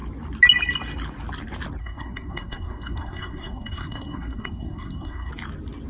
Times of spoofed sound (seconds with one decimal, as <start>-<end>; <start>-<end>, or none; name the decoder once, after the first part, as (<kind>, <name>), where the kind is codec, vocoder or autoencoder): 1.8-5.3 (codec, SNAC)